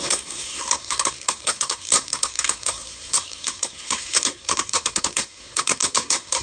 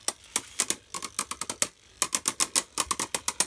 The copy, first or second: first